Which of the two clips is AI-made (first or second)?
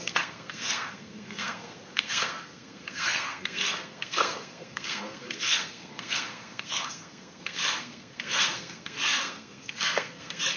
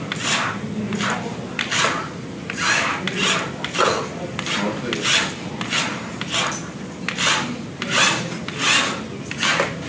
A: first